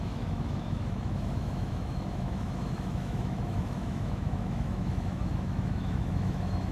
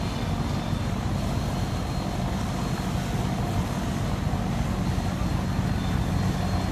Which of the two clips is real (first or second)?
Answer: second